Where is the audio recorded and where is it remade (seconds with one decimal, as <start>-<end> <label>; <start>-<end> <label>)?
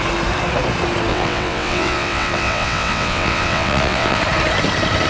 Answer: 0.0-1.1 recorded; 1.1-4.2 remade; 4.2-5.1 recorded